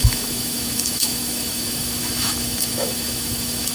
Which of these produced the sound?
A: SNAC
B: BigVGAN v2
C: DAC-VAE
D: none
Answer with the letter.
C